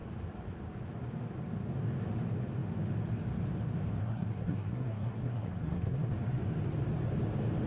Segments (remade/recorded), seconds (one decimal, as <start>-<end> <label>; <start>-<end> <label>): 0.0-4.0 recorded; 4.0-6.1 remade; 6.1-7.7 recorded